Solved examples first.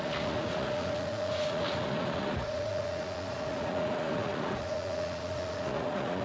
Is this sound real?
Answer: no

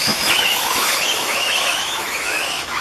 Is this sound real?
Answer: no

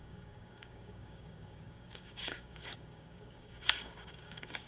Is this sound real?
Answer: no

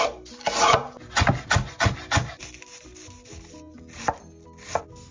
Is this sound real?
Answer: yes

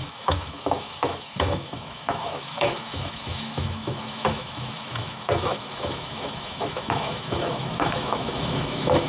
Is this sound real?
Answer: no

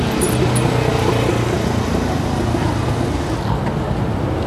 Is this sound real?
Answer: yes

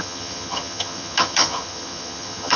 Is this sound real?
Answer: no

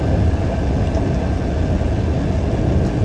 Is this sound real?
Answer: yes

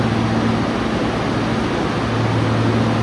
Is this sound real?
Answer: yes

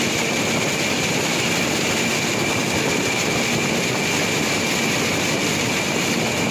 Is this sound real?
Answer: yes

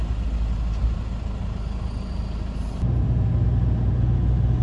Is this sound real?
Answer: yes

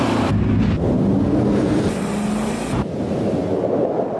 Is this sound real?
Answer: yes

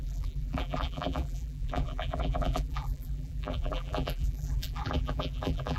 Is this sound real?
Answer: no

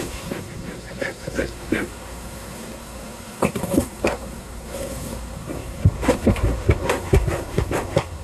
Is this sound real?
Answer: no